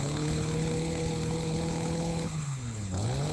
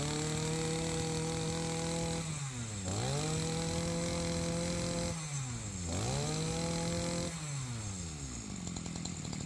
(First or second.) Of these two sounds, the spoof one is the first